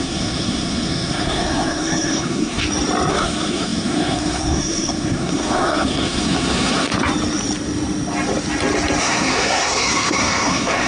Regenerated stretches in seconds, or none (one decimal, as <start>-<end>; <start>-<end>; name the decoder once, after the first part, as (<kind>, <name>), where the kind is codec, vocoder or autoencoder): 0.0-2.6 (codec, SNAC); 3.1-6.9; 9.0-10.9